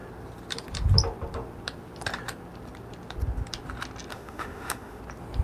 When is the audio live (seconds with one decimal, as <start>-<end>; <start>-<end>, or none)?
0.0-4.1; 5.0-5.4